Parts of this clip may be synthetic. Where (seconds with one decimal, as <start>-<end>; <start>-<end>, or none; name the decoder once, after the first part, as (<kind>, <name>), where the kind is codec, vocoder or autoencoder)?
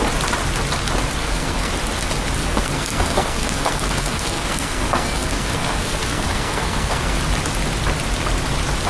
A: 1.2-1.7 (codec, SNAC); 2.4-7.2